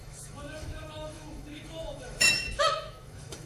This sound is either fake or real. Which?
fake